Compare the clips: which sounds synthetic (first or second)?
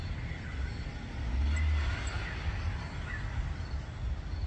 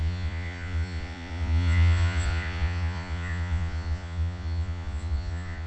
second